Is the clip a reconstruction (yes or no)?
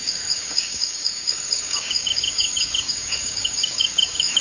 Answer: yes